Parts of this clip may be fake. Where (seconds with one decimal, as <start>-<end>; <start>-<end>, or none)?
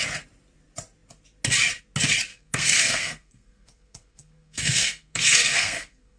2.3-6.2